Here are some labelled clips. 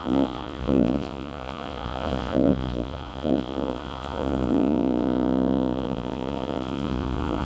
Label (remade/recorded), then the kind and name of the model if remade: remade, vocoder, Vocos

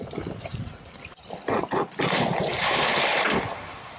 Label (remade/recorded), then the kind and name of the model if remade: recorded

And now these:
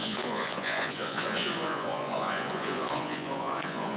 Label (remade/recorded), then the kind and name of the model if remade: remade, vocoder, Vocos